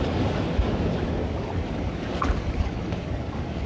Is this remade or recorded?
remade